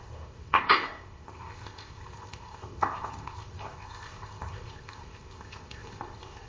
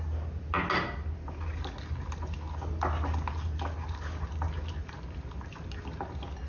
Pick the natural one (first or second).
second